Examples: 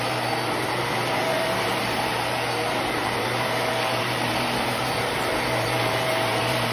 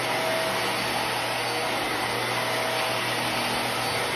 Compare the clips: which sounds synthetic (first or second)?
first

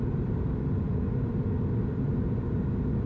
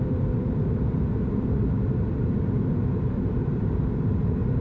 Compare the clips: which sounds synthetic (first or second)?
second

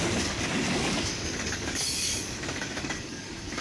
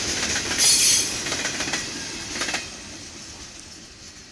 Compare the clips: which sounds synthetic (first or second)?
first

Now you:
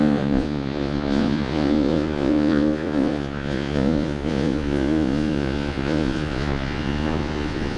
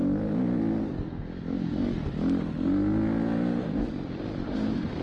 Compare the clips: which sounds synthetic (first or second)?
first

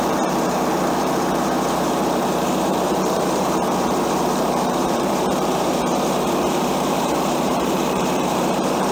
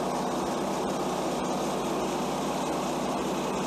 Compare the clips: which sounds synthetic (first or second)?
first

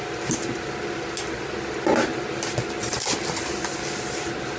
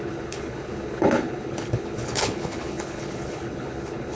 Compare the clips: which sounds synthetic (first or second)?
second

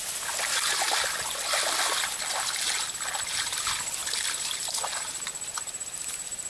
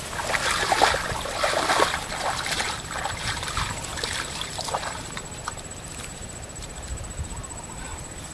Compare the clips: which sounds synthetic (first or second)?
second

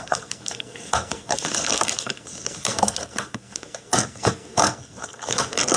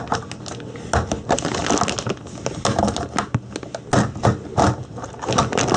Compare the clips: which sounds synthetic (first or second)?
first